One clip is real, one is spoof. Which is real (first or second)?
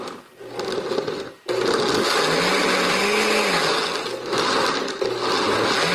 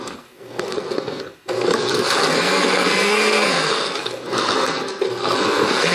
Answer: first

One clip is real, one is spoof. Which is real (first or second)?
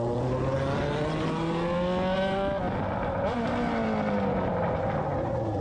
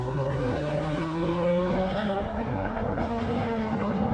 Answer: first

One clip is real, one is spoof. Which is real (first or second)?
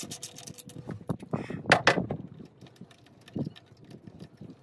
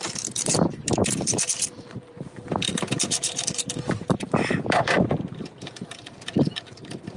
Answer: first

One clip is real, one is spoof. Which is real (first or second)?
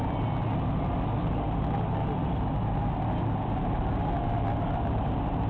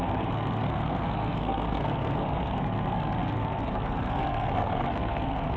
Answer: first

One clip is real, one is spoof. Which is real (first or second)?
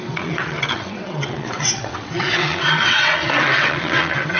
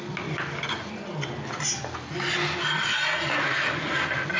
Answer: second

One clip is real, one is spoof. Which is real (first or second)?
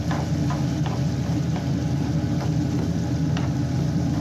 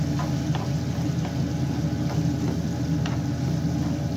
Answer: second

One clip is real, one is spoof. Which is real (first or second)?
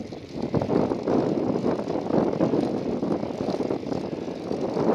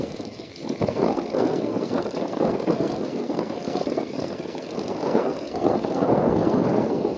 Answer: first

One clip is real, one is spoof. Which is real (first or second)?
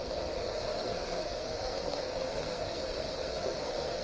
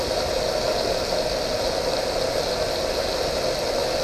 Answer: second